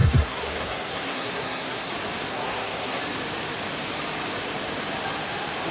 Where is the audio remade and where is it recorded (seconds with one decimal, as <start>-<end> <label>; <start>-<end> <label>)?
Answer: 0.0-1.9 remade; 1.9-2.3 recorded; 2.3-3.0 remade; 3.0-5.7 recorded